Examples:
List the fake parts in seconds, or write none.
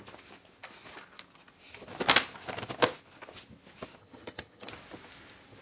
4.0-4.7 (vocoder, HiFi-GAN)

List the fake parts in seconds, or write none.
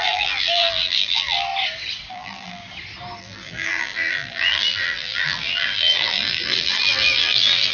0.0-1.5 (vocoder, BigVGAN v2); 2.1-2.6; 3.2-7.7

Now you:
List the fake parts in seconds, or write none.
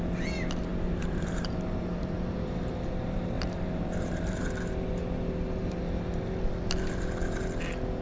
0.7-4.4 (vocoder, BigVGAN v2); 5.6-6.3